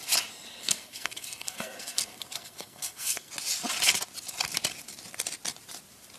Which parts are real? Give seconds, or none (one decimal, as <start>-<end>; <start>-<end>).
0.0-0.6; 3.3-6.2